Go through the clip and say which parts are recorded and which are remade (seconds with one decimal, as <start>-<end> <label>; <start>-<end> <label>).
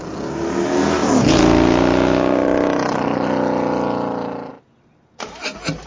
0.0-5.9 recorded